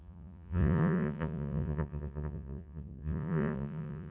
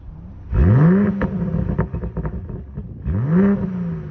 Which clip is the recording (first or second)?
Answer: second